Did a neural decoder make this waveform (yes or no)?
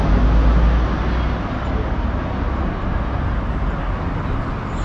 no